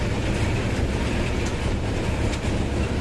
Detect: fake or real real